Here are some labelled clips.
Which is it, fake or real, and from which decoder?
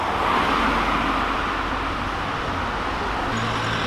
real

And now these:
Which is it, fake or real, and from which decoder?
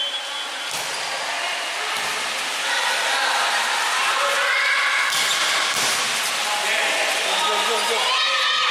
real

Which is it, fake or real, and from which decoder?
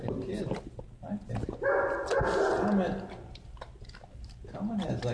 real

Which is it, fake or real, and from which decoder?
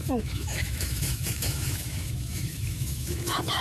fake, autoencoder, DAC-VAE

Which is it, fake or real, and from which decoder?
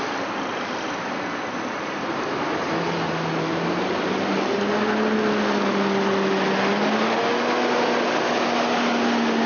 real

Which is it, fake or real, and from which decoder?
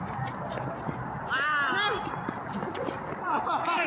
real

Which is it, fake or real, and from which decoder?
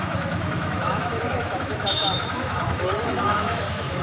fake, autoencoder, DAC-VAE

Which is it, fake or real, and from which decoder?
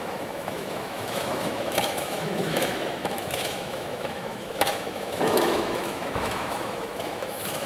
fake, autoencoder, DAC-VAE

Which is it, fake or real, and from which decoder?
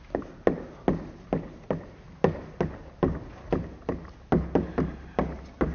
real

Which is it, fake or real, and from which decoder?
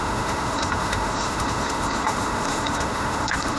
fake, autoencoder, DAC-VAE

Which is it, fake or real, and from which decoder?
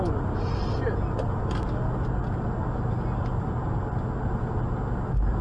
real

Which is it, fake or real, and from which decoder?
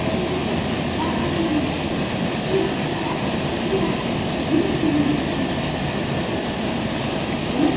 real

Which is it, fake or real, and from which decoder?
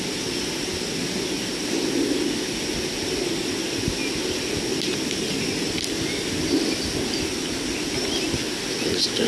real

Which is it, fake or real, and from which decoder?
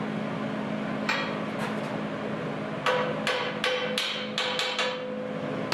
real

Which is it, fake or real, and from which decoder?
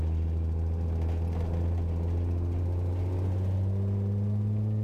real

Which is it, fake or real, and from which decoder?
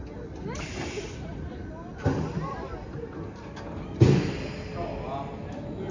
real